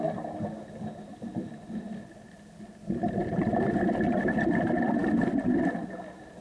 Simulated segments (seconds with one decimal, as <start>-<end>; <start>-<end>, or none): none